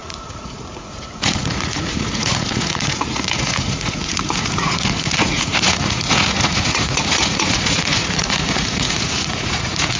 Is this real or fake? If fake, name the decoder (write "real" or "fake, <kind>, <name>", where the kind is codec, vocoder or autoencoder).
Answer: fake, vocoder, Vocos